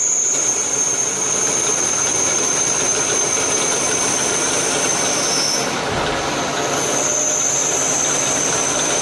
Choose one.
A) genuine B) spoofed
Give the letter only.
A